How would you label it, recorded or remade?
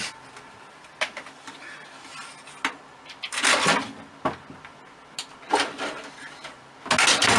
recorded